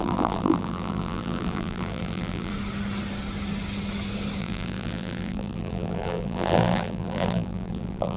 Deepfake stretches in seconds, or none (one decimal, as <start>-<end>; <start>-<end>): 0.0-2.5; 4.4-8.2